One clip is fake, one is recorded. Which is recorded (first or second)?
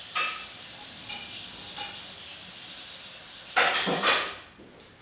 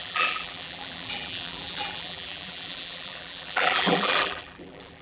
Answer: first